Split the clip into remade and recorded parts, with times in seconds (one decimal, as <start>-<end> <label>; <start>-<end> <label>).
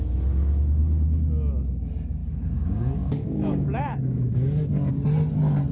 0.0-2.2 recorded; 2.2-4.9 remade; 4.9-5.7 recorded